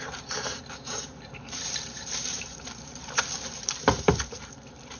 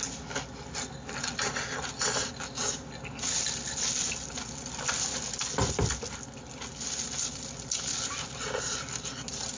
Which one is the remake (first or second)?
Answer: first